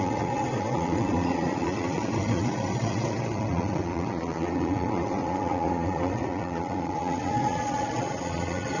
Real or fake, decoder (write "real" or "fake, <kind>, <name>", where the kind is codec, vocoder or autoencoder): fake, vocoder, Vocos